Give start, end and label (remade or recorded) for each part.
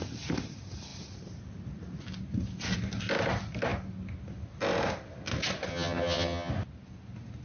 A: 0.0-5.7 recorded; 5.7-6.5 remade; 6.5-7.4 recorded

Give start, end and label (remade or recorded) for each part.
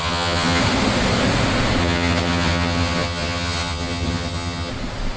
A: 0.0-0.6 remade; 0.6-1.8 recorded; 1.8-4.7 remade; 4.7-5.2 recorded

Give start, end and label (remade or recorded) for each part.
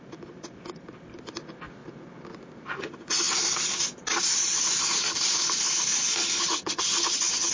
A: 0.0-6.2 recorded; 6.2-7.5 remade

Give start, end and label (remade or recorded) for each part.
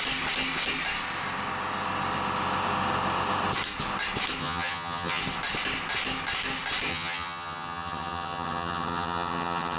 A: 0.0-4.4 recorded; 4.4-5.2 remade; 5.2-6.9 recorded; 6.9-9.8 remade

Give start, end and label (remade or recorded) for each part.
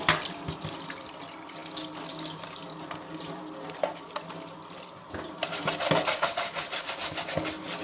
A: 0.0-7.8 recorded